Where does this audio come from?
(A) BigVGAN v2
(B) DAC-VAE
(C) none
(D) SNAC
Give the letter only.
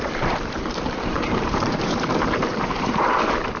A